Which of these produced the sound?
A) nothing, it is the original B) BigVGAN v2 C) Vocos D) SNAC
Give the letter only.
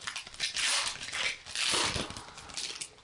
A